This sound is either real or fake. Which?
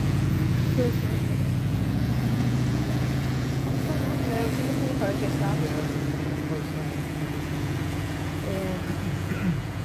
fake